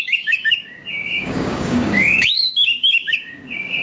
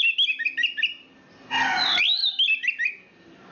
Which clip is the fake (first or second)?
first